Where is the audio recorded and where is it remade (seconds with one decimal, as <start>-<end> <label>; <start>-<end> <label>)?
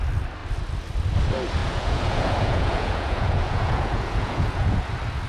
0.0-1.6 recorded; 1.6-4.8 remade; 4.8-5.3 recorded